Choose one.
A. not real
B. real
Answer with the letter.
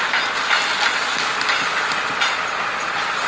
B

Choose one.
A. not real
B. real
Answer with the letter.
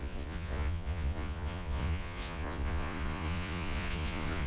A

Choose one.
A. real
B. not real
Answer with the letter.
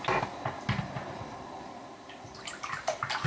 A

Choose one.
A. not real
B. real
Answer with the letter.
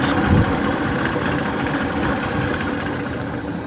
B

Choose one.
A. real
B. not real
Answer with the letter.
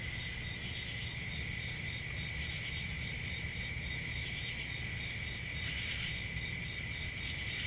A